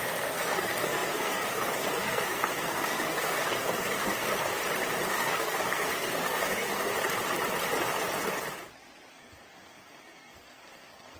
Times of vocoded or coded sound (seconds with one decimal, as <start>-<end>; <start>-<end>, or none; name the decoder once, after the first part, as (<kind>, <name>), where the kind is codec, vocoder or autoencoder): 0.0-4.6 (codec, SNAC); 5.1-6.9; 9.1-11.2